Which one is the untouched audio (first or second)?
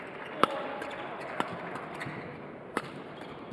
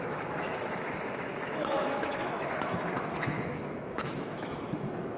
first